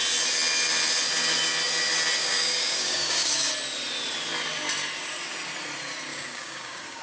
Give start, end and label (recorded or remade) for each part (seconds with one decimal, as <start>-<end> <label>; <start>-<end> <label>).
0.0-2.2 recorded; 2.2-3.5 remade; 3.5-6.1 recorded; 6.1-7.0 remade